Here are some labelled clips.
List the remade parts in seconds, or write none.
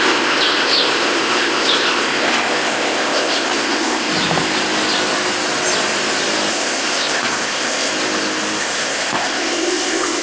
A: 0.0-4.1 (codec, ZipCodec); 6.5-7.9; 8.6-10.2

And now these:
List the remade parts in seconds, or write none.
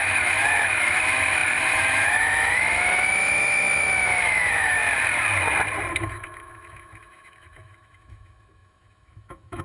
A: 0.0-4.8 (autoencoder, DAC-VAE); 5.9-9.6